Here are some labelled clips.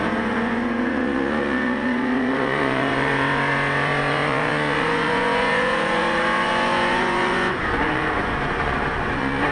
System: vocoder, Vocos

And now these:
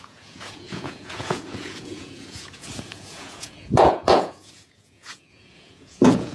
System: vocoder, Vocos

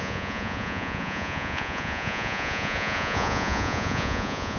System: vocoder, Vocos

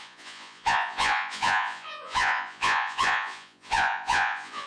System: vocoder, Vocos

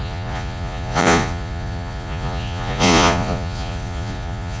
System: vocoder, Vocos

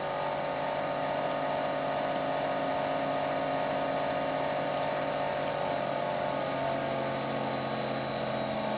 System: none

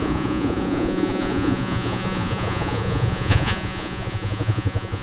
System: vocoder, Vocos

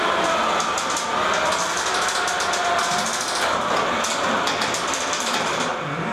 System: none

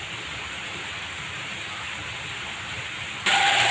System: none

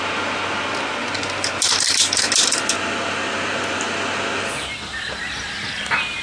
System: none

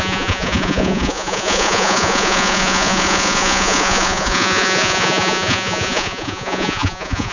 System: vocoder, Vocos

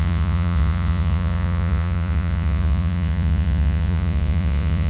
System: vocoder, Vocos